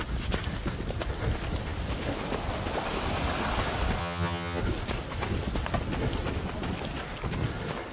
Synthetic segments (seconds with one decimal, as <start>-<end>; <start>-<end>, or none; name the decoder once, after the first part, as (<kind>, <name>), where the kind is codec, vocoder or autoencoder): 4.0-4.6 (vocoder, HiFi-GAN)